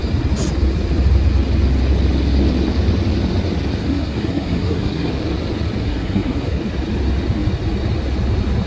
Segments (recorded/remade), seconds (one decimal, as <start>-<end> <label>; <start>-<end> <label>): 0.0-3.8 recorded; 3.8-5.1 remade; 5.1-5.8 recorded; 5.8-6.6 remade; 6.6-8.7 recorded